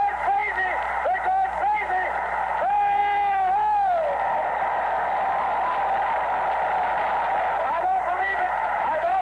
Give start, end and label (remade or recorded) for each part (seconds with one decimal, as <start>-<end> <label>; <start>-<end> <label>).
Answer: 0.0-0.4 remade; 0.4-2.5 recorded; 2.5-3.0 remade; 3.0-7.8 recorded; 7.8-9.2 remade